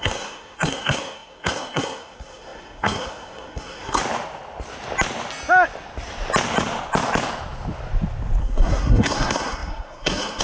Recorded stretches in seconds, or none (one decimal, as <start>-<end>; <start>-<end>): 4.0-8.4